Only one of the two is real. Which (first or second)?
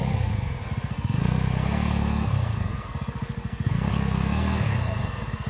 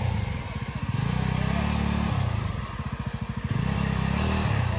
second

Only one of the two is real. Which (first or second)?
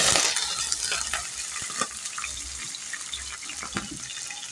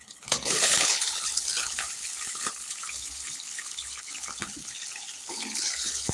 first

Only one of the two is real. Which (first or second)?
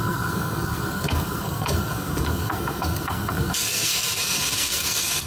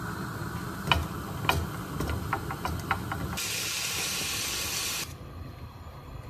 second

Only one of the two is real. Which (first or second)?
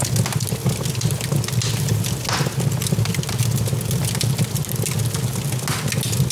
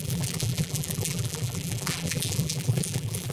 first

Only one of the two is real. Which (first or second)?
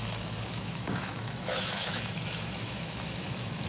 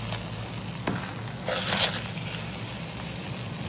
second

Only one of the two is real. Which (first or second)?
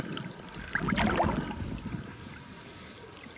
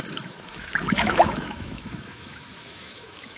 first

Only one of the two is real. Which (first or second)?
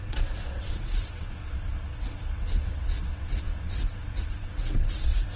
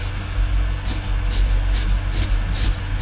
second